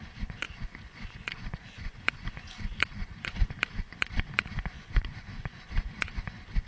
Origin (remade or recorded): remade